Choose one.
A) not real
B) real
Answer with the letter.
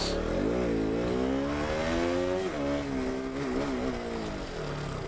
B